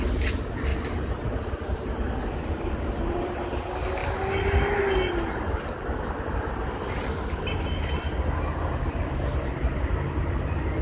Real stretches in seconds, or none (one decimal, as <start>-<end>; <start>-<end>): 0.0-0.7; 3.3-10.8